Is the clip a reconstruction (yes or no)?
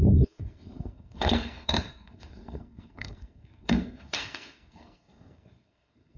yes